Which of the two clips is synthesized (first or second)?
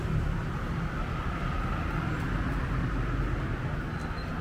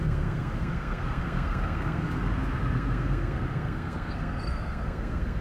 second